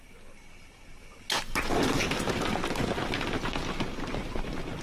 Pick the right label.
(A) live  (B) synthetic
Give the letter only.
A